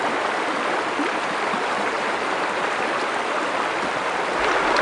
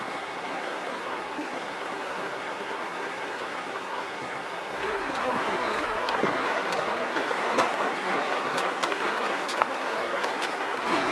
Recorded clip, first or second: first